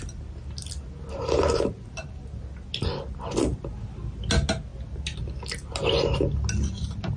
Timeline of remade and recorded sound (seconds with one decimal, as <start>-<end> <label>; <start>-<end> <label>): 0.0-7.2 recorded

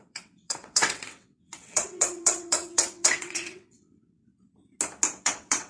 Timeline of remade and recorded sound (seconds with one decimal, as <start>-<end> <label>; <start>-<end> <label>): 0.0-4.3 remade; 4.3-5.2 recorded; 5.2-5.7 remade

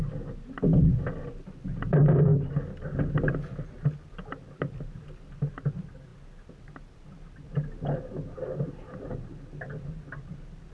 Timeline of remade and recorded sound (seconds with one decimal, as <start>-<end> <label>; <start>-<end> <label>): 0.0-10.7 recorded

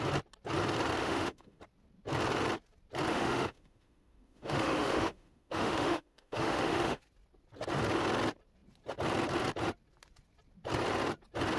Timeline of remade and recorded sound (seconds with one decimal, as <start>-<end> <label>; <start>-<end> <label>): 0.0-1.0 recorded; 1.0-1.6 remade; 1.6-3.1 recorded; 3.1-7.0 remade; 7.0-11.6 recorded

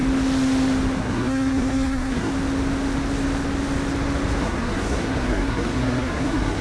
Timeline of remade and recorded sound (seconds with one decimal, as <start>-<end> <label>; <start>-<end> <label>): 0.0-1.0 recorded; 1.0-2.3 remade; 2.3-4.4 recorded; 4.4-6.6 remade

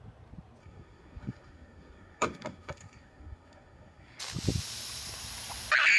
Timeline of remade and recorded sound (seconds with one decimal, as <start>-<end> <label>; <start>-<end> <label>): 0.0-0.6 recorded; 0.6-4.2 remade; 4.2-6.0 recorded